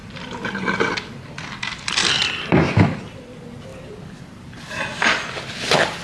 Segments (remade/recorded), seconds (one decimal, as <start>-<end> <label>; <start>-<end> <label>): 0.0-2.7 recorded; 2.7-6.0 remade